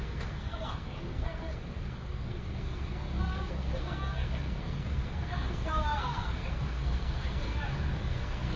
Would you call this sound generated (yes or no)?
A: yes